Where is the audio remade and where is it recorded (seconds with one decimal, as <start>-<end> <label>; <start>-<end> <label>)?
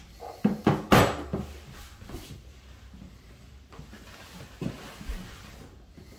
0.0-6.2 recorded